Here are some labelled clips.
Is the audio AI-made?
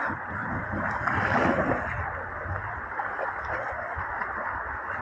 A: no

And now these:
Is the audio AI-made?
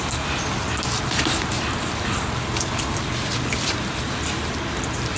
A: no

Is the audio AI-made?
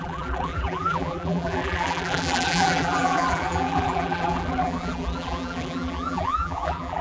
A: yes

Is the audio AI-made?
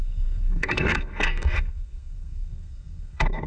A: yes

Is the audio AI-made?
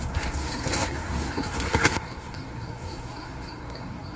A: yes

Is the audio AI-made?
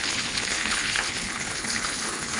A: yes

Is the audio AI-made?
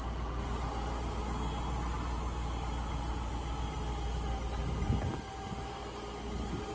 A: no